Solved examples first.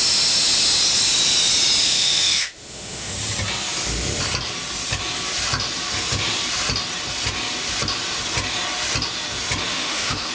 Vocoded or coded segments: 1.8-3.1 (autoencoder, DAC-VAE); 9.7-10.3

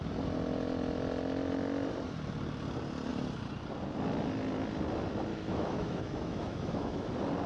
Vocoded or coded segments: 5.3-7.1 (autoencoder, DAC-VAE)

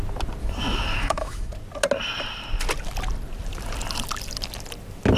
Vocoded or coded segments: 0.4-1.5 (autoencoder, DAC-VAE)

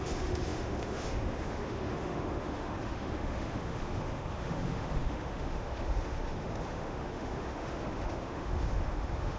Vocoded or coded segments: 0.0-9.4 (autoencoder, DAC-VAE)

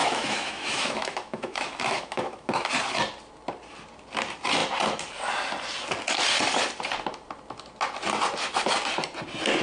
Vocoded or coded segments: 0.0-2.7 (autoencoder, DAC-VAE)

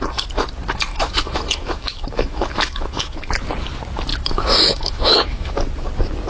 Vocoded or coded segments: 0.9-3.3 (autoencoder, DAC-VAE); 4.1-5.5